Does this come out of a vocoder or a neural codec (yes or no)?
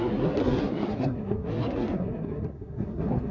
yes